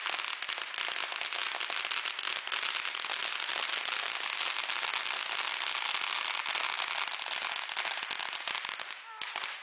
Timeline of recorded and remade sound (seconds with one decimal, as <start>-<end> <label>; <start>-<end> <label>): 0.0-9.6 recorded